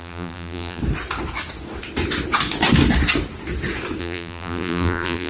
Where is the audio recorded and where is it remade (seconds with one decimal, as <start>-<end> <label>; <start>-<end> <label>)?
0.0-0.8 remade; 0.8-4.0 recorded; 4.0-5.3 remade